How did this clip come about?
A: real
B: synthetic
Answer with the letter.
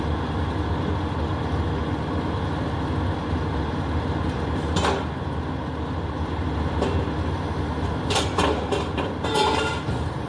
A